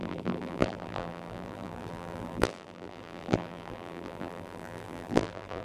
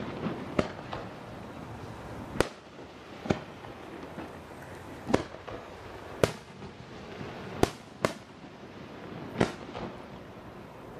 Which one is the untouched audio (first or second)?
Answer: second